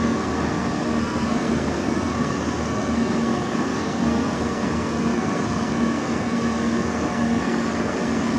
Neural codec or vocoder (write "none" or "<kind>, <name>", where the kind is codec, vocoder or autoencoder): codec, SNAC